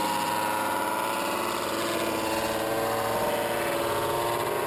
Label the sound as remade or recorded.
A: recorded